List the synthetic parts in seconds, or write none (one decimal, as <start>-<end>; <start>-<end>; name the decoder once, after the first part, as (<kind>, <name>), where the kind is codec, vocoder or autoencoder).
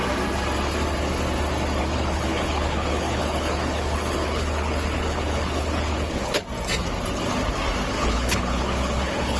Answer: 1.8-6.4 (codec, HILCodec); 7.9-9.4